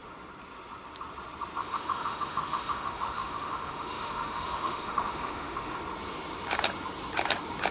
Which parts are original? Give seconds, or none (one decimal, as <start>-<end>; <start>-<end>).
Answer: 0.0-1.6; 5.8-7.7